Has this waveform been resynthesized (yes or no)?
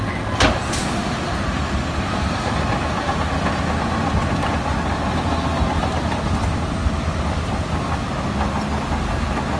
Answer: no